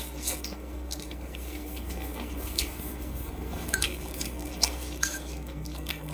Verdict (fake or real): fake